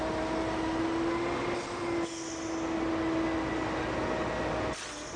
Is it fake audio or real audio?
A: real